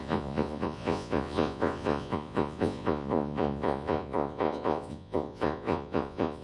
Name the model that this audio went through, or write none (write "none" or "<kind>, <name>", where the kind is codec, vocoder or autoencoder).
vocoder, Vocos